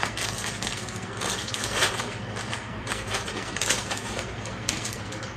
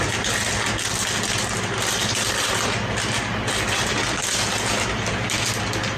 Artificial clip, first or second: first